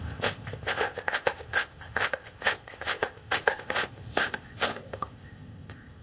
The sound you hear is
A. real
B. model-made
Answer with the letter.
B